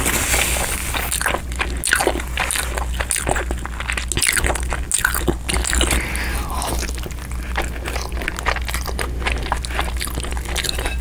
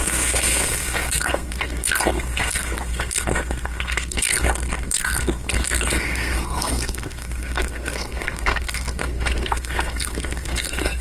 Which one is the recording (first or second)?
first